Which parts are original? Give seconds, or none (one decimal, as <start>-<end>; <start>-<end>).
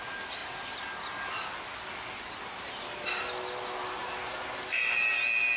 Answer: 0.0-5.6